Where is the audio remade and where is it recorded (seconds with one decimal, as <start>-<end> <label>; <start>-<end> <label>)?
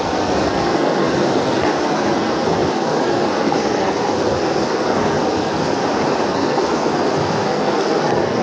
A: 0.0-5.8 remade; 5.8-6.3 recorded; 6.3-8.4 remade